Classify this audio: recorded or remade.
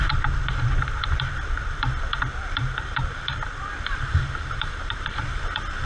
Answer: remade